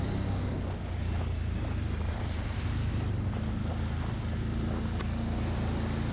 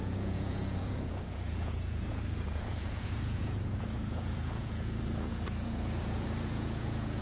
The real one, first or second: first